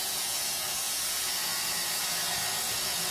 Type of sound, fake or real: fake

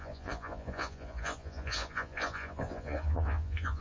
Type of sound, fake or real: fake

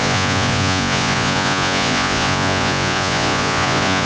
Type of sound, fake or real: fake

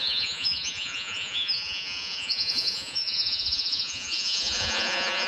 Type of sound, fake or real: fake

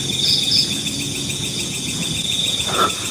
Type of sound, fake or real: fake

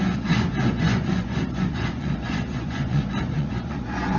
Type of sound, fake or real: fake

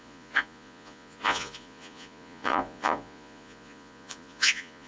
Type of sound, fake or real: fake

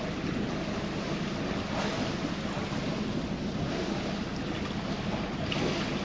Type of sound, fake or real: real